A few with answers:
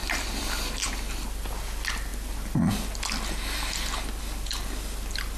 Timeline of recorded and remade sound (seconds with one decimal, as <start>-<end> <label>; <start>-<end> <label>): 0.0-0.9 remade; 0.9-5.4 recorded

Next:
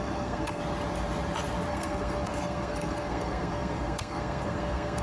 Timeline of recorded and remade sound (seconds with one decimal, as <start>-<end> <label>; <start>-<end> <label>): 0.0-0.6 remade; 0.6-1.7 recorded; 1.7-5.0 remade

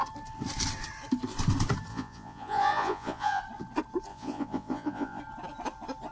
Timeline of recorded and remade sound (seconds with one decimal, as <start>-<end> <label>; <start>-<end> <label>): 0.0-1.9 recorded; 1.9-3.4 remade; 3.4-4.1 recorded; 4.1-5.2 remade; 5.2-6.1 recorded